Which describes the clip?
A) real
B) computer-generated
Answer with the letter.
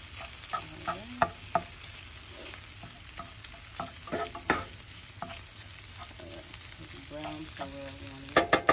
A